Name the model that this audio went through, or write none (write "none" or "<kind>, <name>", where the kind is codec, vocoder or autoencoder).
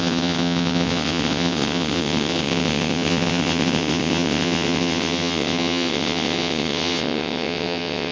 vocoder, WaveNeXt